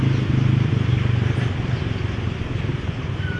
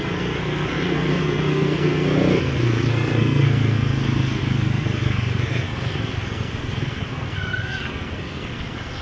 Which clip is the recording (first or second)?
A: first